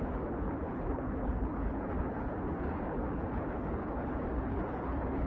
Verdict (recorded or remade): remade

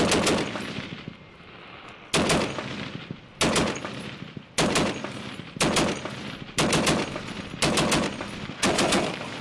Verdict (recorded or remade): recorded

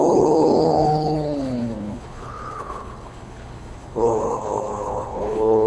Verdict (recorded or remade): remade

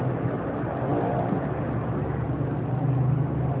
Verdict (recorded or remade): recorded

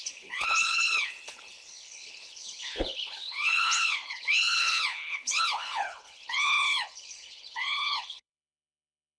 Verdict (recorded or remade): remade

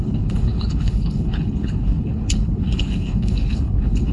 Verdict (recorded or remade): remade